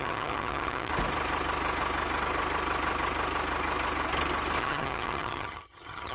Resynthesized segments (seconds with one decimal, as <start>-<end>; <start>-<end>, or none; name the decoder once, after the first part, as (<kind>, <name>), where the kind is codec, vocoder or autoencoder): 0.0-0.9 (vocoder, HiFi-GAN); 4.6-6.1